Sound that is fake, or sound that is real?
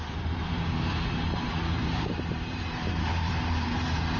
fake